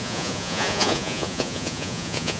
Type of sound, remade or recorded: remade